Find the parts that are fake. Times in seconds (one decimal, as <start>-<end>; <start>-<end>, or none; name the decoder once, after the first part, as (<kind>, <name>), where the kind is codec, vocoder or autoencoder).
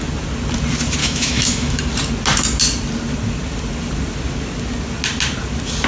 1.0-1.8 (autoencoder, DAC-VAE)